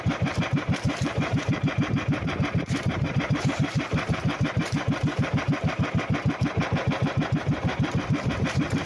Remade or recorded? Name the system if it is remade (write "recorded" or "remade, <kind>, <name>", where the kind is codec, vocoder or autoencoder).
remade, vocoder, BigVGAN v2